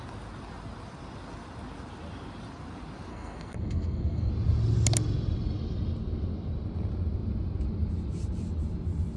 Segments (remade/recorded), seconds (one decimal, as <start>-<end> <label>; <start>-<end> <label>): 0.0-3.1 recorded; 3.1-4.3 remade; 4.3-9.2 recorded